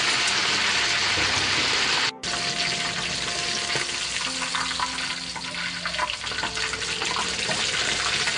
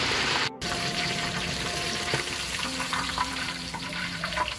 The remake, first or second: second